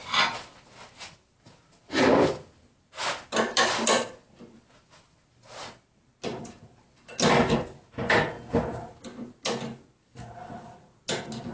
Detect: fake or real real